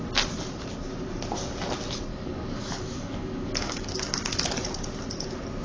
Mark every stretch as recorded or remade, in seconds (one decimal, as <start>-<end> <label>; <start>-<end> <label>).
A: 0.0-2.1 recorded; 2.1-4.2 remade; 4.2-5.6 recorded